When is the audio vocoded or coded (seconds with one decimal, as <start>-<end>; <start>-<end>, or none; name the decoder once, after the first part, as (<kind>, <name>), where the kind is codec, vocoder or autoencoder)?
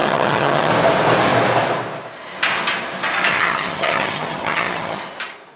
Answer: 0.0-0.7 (vocoder, HiFi-GAN); 3.3-5.0